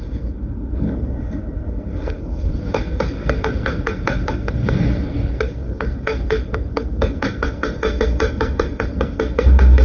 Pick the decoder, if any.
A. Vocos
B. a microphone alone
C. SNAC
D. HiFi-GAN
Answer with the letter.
C